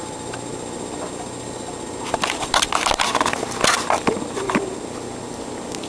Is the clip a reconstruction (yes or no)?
no